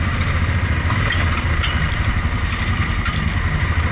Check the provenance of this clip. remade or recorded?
remade